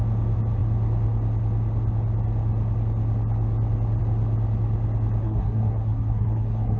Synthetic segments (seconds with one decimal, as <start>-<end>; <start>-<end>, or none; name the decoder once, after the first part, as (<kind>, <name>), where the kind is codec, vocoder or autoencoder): 5.2-6.8 (codec, SNAC)